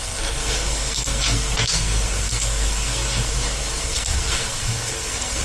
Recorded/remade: remade